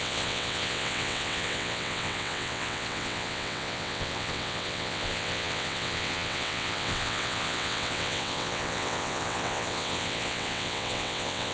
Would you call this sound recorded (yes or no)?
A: no